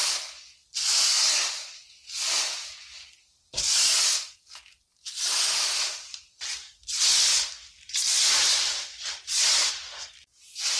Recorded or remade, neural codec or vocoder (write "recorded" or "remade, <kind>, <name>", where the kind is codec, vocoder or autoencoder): recorded